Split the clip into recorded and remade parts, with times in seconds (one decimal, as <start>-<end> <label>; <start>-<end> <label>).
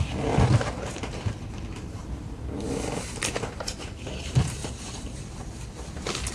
0.0-6.3 recorded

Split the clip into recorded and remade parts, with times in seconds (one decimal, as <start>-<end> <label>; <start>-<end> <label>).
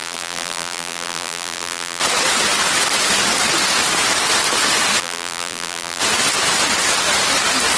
0.0-2.0 remade; 2.0-5.0 recorded; 5.0-6.0 remade; 6.0-7.8 recorded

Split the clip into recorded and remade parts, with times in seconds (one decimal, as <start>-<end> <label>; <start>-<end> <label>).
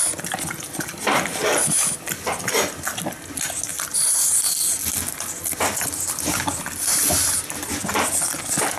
0.0-8.8 recorded